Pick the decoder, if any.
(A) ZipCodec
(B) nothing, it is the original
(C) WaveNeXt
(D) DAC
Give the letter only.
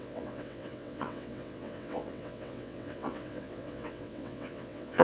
C